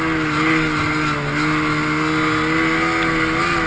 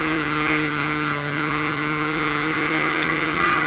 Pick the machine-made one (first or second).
second